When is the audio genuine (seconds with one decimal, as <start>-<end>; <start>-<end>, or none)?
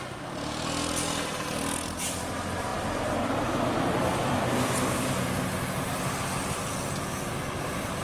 0.0-2.7; 5.4-8.0